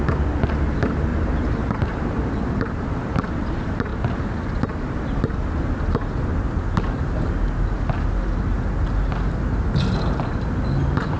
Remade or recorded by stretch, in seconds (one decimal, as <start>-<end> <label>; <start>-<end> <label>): 0.0-1.1 recorded; 1.1-3.3 remade; 3.3-11.2 recorded